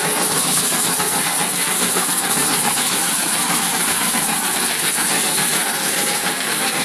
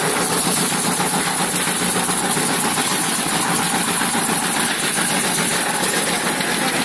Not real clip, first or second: first